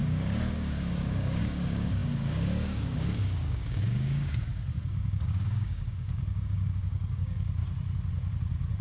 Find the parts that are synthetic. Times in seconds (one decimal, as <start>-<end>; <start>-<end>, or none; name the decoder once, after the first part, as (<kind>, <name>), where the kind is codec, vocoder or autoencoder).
0.0-7.6 (codec, DAC)